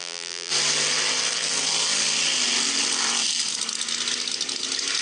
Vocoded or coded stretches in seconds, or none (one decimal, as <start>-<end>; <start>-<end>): 0.0-0.5